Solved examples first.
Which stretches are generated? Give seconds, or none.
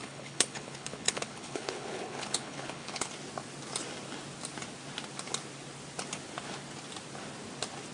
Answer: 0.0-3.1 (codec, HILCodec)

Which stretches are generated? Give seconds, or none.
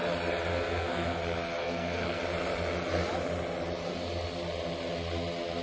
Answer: 0.5-1.2 (codec, SNAC); 1.6-2.2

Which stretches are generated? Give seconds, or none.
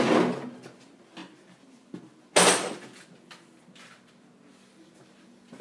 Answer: none